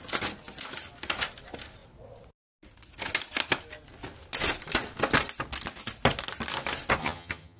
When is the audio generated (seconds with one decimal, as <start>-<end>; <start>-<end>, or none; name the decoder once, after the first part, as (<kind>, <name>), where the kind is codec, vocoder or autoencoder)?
7.0-7.6 (vocoder, HiFi-GAN)